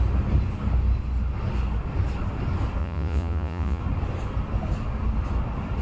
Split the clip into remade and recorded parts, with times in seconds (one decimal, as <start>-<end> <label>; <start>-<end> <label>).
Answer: 0.0-2.8 recorded; 2.8-3.8 remade; 3.8-5.8 recorded